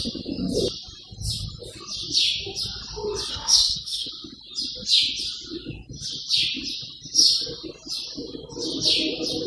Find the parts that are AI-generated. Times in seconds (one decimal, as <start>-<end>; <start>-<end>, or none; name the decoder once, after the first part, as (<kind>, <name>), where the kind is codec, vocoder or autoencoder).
3.3-4.1 (codec, SNAC)